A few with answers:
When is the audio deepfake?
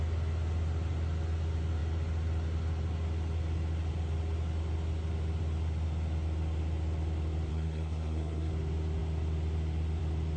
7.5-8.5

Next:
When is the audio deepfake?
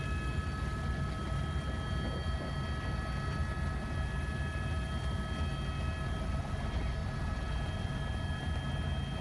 7.0-8.0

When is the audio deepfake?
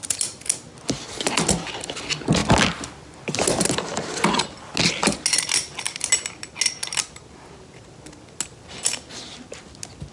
none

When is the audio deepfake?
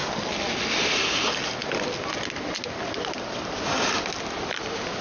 none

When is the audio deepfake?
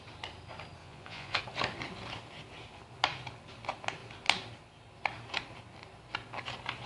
0.8-1.4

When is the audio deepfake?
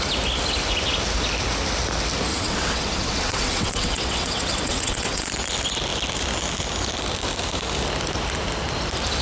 2.3-5.3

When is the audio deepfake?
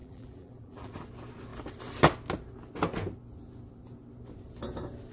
0.0-0.9